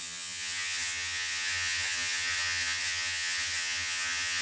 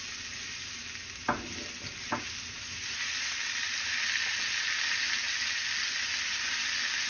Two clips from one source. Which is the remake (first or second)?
first